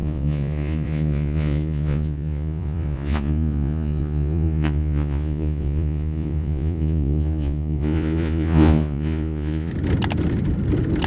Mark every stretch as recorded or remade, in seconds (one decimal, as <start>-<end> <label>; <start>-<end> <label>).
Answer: 0.0-9.7 remade; 9.7-11.1 recorded